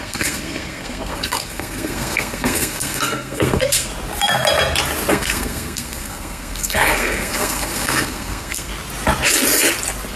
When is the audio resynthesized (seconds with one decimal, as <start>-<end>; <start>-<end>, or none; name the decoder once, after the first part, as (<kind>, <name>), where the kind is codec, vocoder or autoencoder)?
0.0-3.9 (codec, SNAC); 5.1-8.7